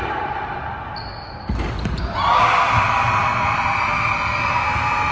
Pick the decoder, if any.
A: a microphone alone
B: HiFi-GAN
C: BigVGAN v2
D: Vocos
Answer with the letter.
A